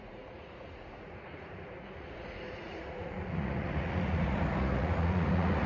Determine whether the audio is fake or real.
fake